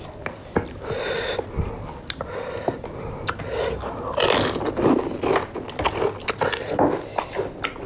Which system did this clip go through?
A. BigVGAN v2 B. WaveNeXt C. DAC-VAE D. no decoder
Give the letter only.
D